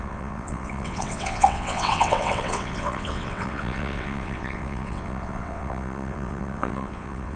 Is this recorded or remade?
remade